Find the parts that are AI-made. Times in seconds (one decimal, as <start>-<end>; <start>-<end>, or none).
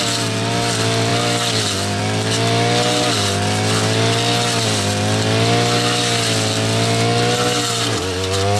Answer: none